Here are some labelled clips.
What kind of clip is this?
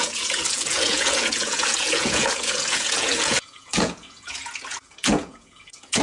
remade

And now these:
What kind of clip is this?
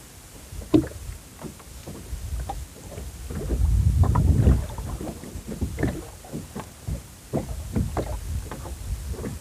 recorded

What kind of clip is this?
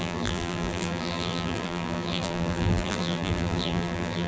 remade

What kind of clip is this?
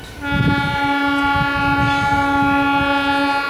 recorded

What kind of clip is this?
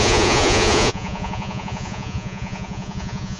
remade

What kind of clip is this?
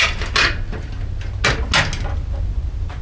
recorded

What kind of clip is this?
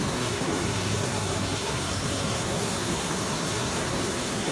remade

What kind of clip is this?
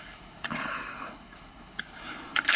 remade